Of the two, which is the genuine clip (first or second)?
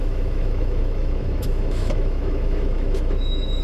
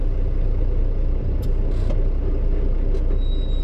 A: second